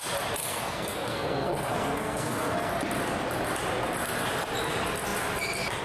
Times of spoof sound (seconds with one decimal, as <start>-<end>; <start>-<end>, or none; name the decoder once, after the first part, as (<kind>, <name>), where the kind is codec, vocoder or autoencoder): 0.4-2.7 (codec, SNAC)

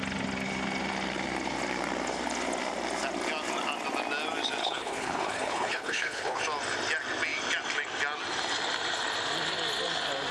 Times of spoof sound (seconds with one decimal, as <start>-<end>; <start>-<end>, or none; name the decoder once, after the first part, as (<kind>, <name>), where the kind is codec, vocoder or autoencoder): 4.6-6.4 (codec, HILCodec)

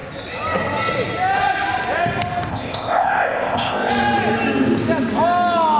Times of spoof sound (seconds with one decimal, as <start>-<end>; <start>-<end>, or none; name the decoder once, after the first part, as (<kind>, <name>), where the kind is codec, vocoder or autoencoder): 2.5-3.9 (codec, ZipCodec)

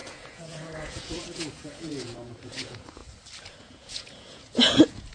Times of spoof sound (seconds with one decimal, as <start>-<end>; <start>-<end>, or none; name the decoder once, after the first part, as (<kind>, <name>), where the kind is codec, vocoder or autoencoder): 0.0-3.0 (vocoder, Vocos); 3.6-5.1

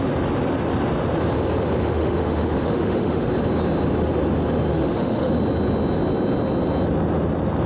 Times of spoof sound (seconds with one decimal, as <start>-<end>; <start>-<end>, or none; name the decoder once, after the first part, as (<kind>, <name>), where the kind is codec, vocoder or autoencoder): 1.8-3.3 (autoencoder, DAC-VAE); 4.7-5.3